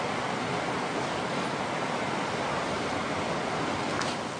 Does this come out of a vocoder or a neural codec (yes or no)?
no